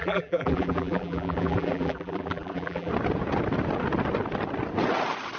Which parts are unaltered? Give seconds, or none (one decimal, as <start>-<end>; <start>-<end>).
2.9-5.4

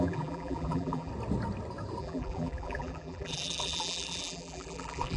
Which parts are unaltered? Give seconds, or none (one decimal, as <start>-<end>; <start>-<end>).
1.1-2.0

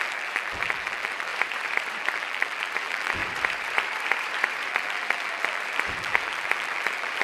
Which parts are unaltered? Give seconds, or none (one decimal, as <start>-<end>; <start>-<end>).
1.3-2.0; 3.2-4.7

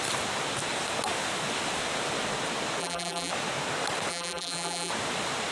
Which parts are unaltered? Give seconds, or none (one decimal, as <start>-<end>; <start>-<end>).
0.0-2.8; 3.3-4.1; 4.9-5.5